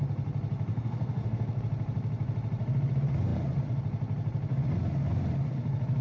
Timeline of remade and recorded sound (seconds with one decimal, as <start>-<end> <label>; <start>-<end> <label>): 0.0-0.7 recorded; 0.7-1.6 remade; 1.6-6.0 recorded